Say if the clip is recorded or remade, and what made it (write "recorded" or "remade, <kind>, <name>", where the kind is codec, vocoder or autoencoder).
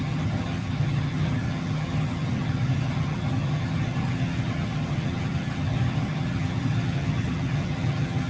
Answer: remade, vocoder, HiFi-GAN